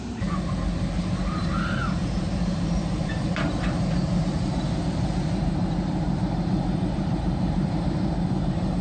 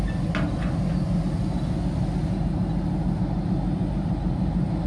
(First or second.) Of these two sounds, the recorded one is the second